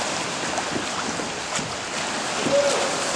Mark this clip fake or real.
real